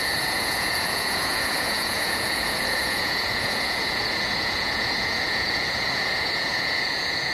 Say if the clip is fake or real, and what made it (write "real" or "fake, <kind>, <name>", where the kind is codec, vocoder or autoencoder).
fake, vocoder, Vocos